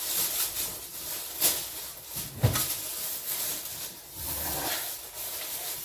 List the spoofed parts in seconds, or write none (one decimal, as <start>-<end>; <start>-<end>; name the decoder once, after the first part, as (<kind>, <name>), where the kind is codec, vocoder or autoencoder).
none